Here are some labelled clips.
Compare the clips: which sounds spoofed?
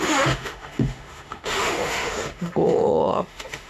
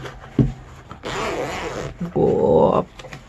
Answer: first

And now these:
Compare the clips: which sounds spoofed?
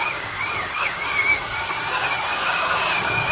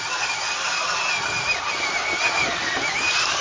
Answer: first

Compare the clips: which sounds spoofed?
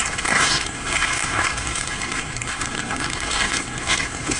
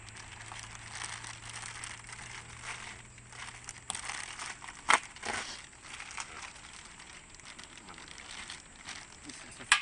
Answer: first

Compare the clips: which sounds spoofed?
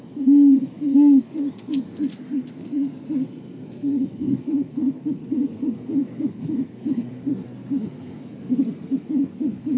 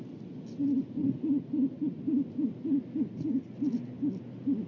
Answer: first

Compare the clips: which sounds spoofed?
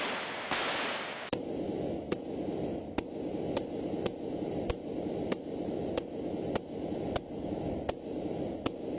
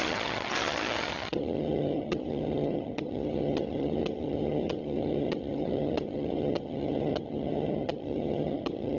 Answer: second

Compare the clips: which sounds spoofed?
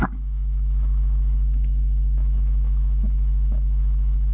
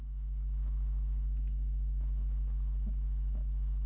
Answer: first